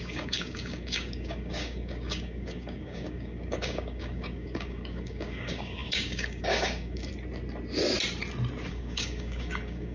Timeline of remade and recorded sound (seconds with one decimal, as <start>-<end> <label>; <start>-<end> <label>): 0.0-7.1 remade; 7.1-8.7 recorded; 8.7-9.9 remade